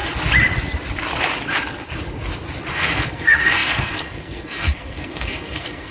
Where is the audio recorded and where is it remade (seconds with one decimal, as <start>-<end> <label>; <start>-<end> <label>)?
0.0-2.7 recorded; 2.7-5.9 remade